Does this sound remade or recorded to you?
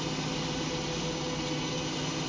recorded